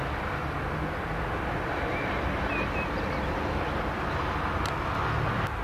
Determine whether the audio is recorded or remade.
recorded